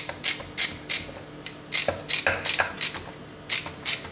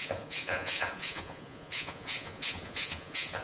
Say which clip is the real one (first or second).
first